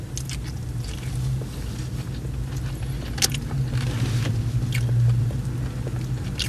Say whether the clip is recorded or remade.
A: recorded